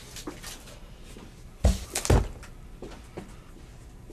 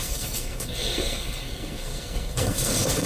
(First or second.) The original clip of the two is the first